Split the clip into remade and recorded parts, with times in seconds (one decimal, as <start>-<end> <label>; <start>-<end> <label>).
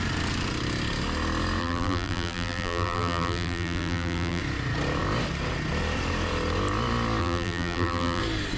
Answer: 0.0-1.6 recorded; 1.6-4.4 remade; 4.4-7.2 recorded; 7.2-8.2 remade; 8.2-8.6 recorded